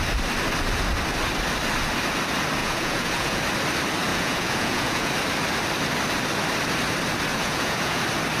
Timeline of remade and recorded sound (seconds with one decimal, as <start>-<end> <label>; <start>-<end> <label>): 0.0-2.6 recorded; 2.6-3.4 remade; 3.4-4.1 recorded; 4.1-5.1 remade; 5.1-7.3 recorded; 7.3-8.0 remade; 8.0-8.4 recorded